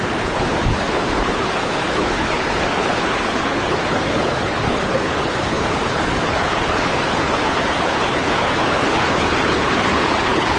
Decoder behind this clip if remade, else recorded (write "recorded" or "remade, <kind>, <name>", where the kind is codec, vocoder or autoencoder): remade, codec, HILCodec